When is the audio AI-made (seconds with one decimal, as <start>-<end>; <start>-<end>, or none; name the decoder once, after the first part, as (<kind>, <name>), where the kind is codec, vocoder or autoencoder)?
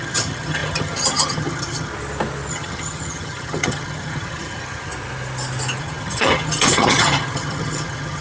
0.0-1.9 (vocoder, HiFi-GAN); 2.5-4.9; 5.8-8.2